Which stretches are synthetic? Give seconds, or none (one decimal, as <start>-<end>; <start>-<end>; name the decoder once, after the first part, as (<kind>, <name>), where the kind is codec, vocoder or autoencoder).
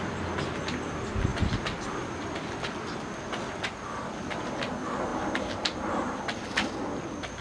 5.1-6.2 (vocoder, BigVGAN v2)